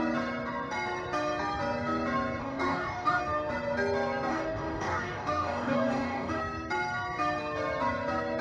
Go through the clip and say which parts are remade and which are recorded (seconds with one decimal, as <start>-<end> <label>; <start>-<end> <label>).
0.0-2.4 recorded; 2.4-3.2 remade; 3.2-4.3 recorded; 4.3-6.4 remade; 6.4-8.4 recorded